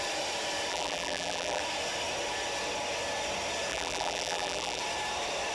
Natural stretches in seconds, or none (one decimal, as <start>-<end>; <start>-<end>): 0.0-0.7; 1.6-3.7; 4.8-5.5